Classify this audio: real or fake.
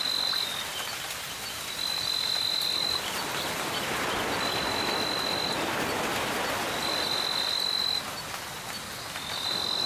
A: real